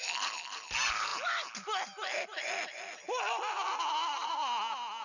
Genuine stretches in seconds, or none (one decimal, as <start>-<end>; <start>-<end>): 0.0-5.0